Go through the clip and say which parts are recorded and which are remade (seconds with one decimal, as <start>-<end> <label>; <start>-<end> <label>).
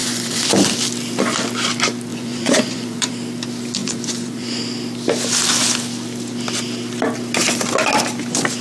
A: 0.0-0.5 remade; 0.5-2.1 recorded; 2.1-3.1 remade; 3.1-3.8 recorded; 3.8-4.6 remade; 4.6-8.6 recorded